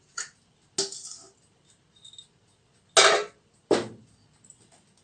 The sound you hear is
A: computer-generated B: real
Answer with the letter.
B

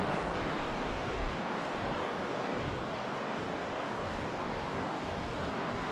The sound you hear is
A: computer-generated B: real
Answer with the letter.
A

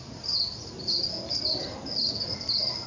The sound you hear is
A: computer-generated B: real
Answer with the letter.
B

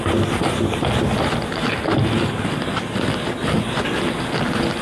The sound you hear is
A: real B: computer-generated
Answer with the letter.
A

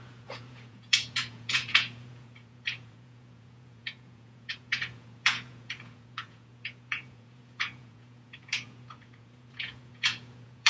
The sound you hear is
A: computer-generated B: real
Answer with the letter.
A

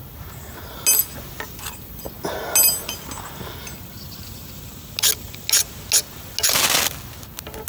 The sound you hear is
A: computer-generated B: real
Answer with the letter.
B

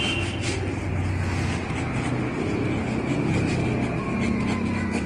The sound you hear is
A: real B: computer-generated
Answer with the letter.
A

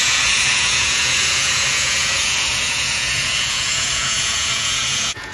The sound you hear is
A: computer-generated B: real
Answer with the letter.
A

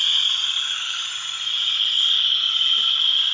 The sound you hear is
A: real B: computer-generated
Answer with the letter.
A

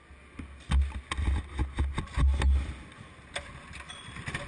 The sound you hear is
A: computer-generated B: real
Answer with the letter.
B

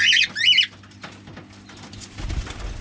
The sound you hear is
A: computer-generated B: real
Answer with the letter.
B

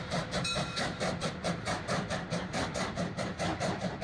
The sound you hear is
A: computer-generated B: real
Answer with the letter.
A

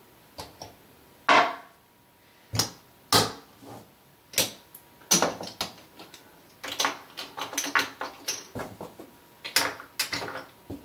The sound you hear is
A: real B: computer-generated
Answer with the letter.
A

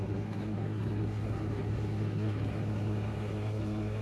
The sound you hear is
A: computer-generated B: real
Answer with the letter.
A